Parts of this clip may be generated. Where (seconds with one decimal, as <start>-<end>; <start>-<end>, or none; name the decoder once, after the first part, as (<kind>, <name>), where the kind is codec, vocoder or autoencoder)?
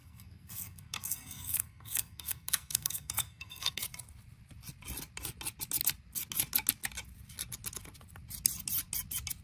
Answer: 0.0-3.8 (codec, SNAC)